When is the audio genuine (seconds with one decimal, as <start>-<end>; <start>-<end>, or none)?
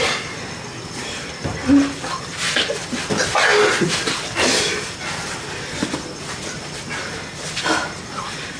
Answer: 0.0-8.6